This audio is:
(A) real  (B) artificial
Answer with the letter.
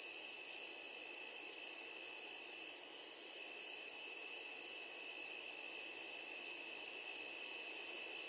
A